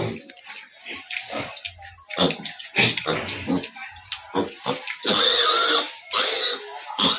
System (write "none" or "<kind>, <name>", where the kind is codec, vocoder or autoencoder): none